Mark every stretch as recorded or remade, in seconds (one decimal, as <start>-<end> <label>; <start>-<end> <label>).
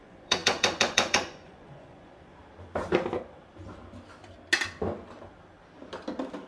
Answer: 0.0-2.3 remade; 2.3-6.5 recorded